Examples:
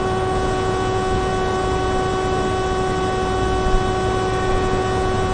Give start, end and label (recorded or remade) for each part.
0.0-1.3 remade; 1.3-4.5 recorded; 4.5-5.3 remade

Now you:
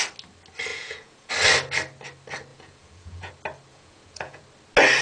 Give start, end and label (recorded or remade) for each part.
0.0-0.7 recorded; 0.7-1.3 remade; 1.3-2.5 recorded; 2.5-3.3 remade; 3.3-3.7 recorded; 3.7-4.4 remade; 4.4-5.0 recorded

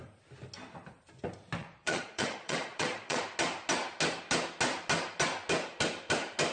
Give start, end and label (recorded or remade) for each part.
0.0-1.6 recorded; 1.6-3.2 remade; 3.2-6.5 recorded

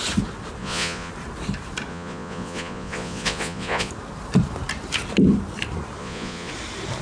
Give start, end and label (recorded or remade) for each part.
0.0-0.6 recorded; 0.6-1.1 remade; 1.1-1.9 recorded; 1.9-3.9 remade; 3.9-6.0 recorded; 6.0-6.5 remade; 6.5-7.0 recorded

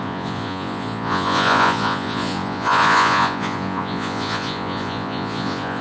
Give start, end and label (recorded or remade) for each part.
0.0-5.8 remade

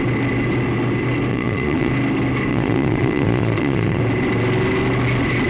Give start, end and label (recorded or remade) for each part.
0.0-1.3 recorded; 1.3-1.9 remade; 1.9-2.5 recorded; 2.5-4.0 remade; 4.0-5.5 recorded